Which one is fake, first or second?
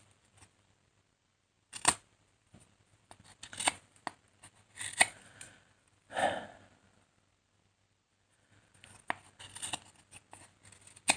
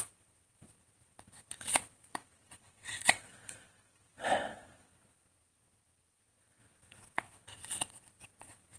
second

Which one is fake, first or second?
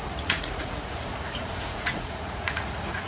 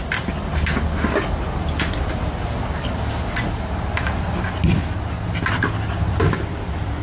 first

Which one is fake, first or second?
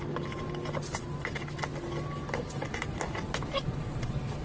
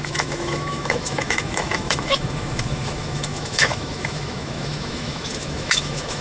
second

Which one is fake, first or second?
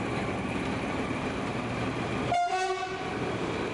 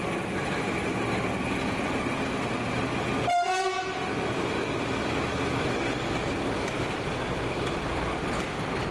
first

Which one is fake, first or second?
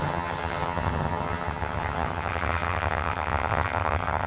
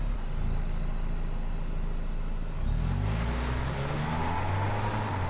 first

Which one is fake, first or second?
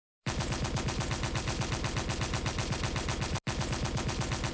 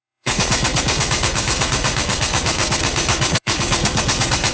second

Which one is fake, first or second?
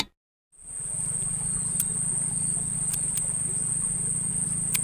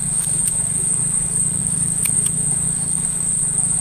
second